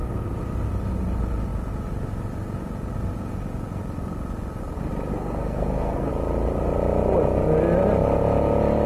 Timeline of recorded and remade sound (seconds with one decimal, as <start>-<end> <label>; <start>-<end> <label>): 0.0-5.1 recorded; 5.1-6.1 remade; 6.1-8.9 recorded